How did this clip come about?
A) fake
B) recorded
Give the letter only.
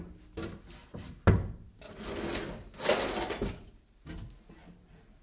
B